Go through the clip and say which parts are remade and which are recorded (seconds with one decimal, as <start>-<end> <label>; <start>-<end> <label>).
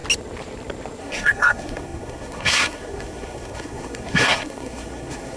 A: 0.0-1.0 recorded; 1.0-5.4 remade